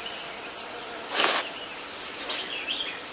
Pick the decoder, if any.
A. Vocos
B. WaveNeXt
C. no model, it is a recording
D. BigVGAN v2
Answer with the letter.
C